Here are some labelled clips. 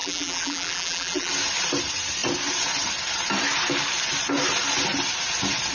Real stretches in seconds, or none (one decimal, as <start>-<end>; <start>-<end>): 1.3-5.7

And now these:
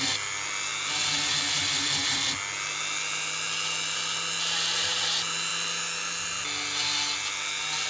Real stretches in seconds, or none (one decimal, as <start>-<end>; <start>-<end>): 0.0-7.9

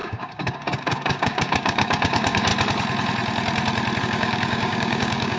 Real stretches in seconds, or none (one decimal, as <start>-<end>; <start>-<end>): 2.5-4.0